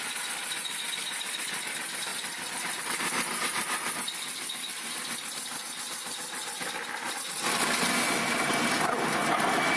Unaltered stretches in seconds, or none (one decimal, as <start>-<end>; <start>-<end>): 0.0-9.8